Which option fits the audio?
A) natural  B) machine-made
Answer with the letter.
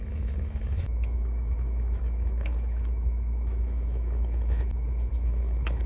B